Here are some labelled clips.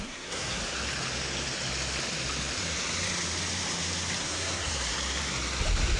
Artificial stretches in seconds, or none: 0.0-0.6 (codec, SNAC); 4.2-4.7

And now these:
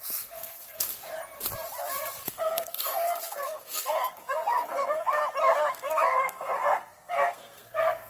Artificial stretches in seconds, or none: 0.0-1.0 (codec, SNAC); 2.2-5.2; 5.7-8.1

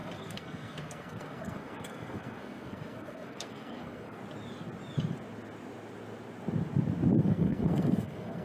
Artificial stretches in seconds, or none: 0.0-4.2 (codec, SNAC); 7.2-8.4

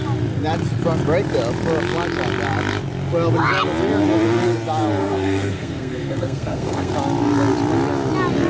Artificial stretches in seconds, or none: 5.0-6.9 (codec, SNAC)